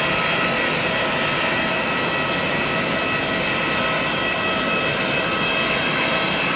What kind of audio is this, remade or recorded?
recorded